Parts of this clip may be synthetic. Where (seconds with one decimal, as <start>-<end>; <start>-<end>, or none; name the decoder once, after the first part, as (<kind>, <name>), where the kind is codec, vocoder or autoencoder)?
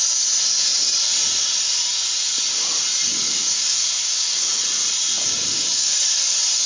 3.1-4.6 (codec, DAC); 5.2-6.2